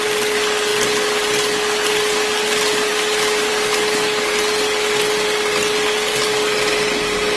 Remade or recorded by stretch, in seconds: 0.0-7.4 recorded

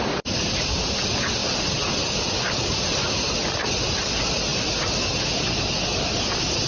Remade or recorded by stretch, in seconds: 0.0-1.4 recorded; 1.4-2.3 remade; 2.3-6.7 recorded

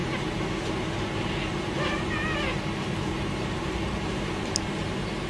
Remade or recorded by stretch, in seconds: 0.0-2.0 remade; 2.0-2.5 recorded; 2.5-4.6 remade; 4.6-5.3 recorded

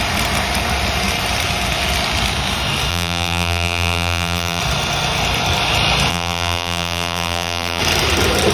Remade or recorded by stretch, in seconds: 0.0-2.9 recorded; 2.9-4.6 remade; 4.6-6.1 recorded; 6.1-7.8 remade; 7.8-8.5 recorded